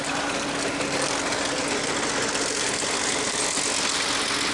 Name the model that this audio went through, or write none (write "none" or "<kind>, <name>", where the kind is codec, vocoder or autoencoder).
none